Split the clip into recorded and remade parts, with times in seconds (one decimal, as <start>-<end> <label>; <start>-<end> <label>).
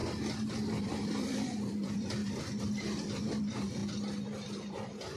0.0-0.8 recorded; 0.8-2.2 remade; 2.2-3.2 recorded; 3.2-3.8 remade; 3.8-4.5 recorded; 4.5-5.2 remade